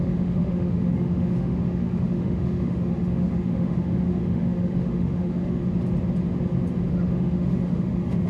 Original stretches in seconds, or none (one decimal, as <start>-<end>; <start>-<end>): 5.6-6.9